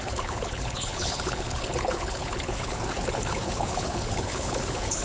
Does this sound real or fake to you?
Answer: fake